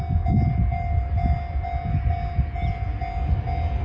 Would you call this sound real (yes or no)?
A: yes